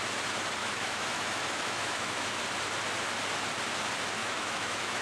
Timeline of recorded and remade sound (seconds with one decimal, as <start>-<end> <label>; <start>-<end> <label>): 0.0-0.6 recorded; 0.6-2.4 remade; 2.4-4.2 recorded; 4.2-5.0 remade